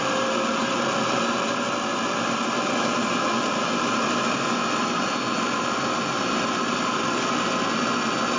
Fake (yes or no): no